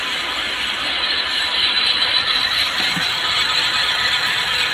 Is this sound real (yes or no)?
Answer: no